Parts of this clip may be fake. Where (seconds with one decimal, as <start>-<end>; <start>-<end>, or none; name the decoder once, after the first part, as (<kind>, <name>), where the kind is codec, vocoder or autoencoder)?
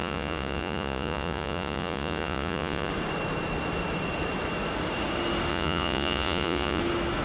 0.0-2.9 (vocoder, Vocos); 5.5-6.8